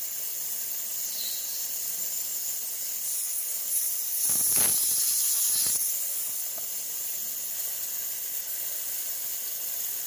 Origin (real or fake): real